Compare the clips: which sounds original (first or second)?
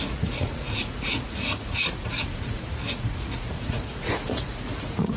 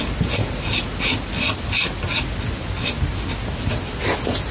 second